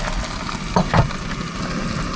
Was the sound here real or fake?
real